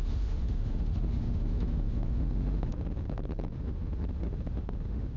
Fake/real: fake